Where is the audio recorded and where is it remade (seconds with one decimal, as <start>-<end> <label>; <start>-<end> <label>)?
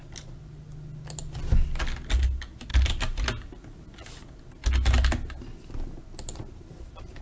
0.0-7.2 recorded